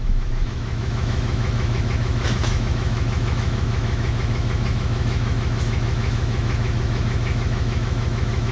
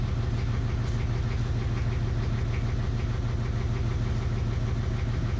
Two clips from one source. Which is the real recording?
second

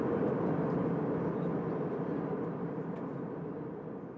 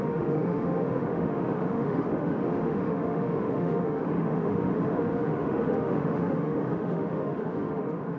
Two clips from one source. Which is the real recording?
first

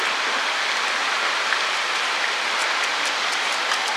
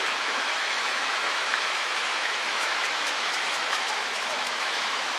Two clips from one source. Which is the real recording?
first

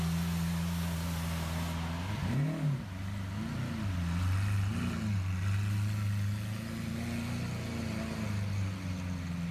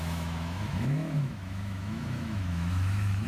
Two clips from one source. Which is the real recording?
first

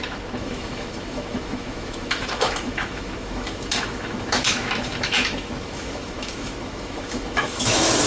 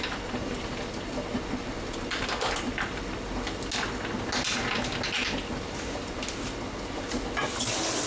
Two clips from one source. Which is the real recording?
second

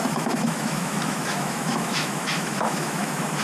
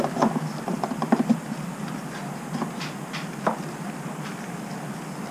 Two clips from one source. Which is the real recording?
second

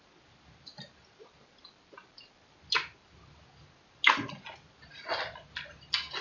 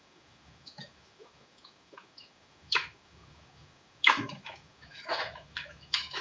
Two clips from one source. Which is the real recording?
first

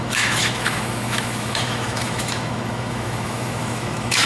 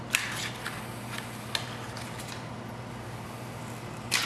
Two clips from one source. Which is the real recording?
second